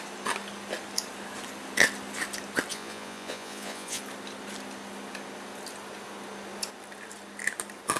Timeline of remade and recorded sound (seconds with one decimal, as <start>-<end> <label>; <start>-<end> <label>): 0.0-2.7 recorded; 2.7-4.0 remade; 4.0-8.0 recorded